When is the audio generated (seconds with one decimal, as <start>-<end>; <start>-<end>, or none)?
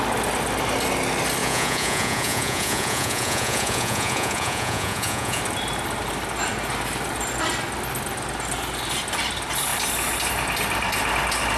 1.4-5.4